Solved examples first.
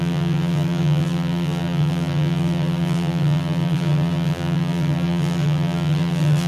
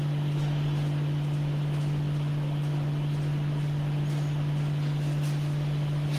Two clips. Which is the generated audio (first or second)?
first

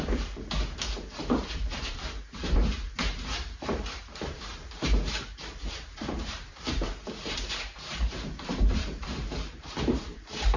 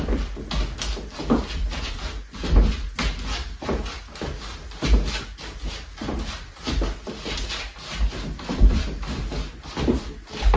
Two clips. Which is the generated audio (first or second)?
first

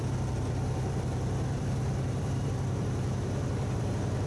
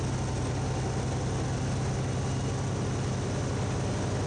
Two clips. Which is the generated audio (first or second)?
first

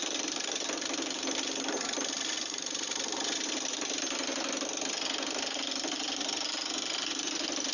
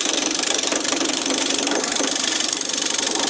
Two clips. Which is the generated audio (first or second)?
second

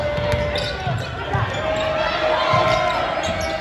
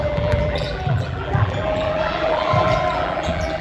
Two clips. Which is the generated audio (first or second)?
second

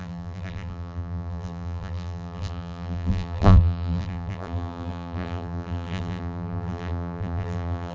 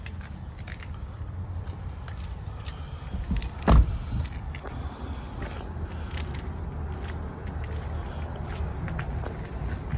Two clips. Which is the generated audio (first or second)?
first